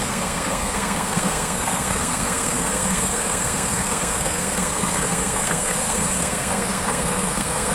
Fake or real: fake